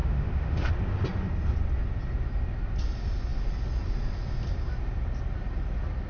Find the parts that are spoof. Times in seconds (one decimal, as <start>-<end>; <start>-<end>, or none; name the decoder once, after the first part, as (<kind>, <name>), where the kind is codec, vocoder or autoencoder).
0.0-0.7 (autoencoder, DAC-VAE)